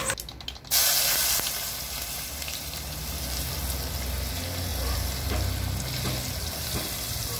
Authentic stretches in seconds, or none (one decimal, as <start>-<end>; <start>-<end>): 0.0-4.7; 5.3-6.5